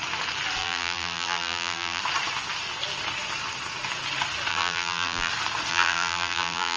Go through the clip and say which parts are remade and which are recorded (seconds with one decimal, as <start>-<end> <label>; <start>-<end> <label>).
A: 0.0-0.6 recorded; 0.6-2.0 remade; 2.0-4.5 recorded; 4.5-5.3 remade; 5.3-5.7 recorded; 5.7-6.8 remade